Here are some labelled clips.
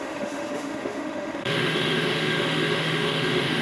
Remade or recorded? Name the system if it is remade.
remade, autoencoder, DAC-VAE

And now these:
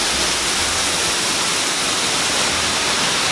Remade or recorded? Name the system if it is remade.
recorded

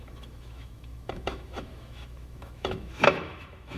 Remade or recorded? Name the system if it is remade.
remade, autoencoder, DAC-VAE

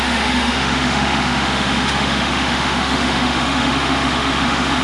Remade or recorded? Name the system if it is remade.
remade, autoencoder, DAC-VAE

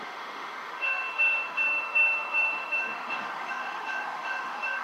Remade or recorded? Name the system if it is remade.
remade, autoencoder, DAC-VAE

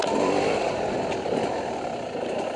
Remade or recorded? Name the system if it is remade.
recorded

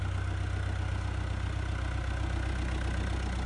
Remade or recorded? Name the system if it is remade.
recorded